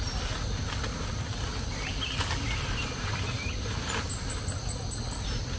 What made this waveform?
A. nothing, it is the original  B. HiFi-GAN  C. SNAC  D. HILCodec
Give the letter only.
A